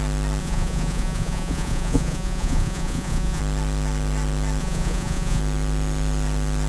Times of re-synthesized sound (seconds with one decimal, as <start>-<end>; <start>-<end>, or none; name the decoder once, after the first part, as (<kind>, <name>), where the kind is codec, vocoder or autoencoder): 0.4-3.4 (vocoder, Vocos); 4.6-5.4